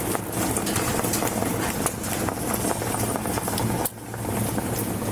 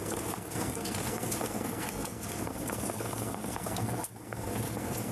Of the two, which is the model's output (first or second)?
second